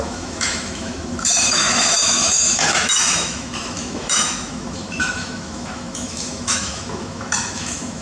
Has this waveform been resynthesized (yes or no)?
yes